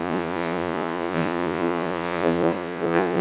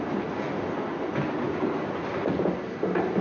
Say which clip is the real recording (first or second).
second